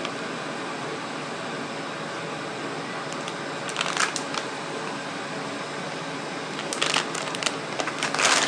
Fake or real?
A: real